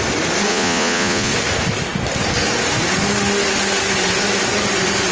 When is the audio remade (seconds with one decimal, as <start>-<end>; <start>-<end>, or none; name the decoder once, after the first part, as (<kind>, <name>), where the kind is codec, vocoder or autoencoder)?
0.5-1.3 (vocoder, Vocos)